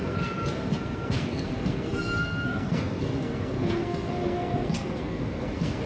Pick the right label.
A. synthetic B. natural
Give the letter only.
A